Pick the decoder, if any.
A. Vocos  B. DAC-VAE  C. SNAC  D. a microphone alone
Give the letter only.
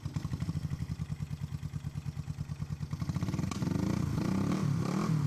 D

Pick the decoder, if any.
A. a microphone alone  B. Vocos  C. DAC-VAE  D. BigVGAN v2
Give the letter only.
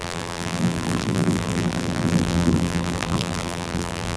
D